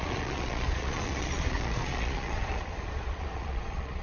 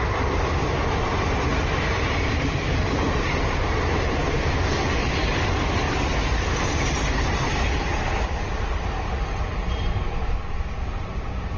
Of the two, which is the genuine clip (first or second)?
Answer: second